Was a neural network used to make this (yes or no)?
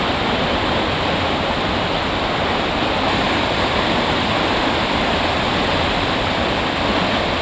no